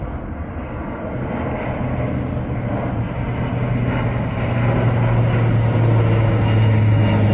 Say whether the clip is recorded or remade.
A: recorded